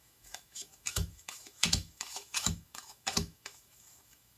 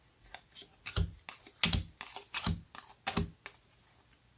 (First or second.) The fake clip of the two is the first